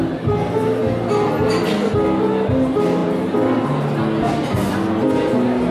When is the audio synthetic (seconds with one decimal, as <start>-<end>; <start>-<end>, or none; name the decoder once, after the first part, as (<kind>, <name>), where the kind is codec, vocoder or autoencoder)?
none